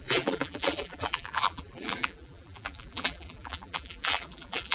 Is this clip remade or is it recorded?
remade